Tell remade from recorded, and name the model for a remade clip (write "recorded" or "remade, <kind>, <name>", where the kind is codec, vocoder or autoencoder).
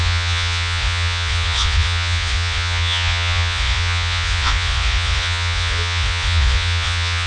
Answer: remade, vocoder, Vocos